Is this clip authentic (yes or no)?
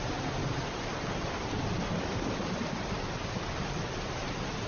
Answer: yes